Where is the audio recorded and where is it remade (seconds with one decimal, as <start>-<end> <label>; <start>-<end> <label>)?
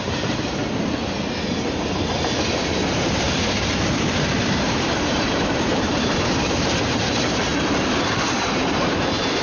0.0-0.6 remade; 0.6-2.5 recorded; 2.5-7.5 remade; 7.5-8.3 recorded; 8.3-9.4 remade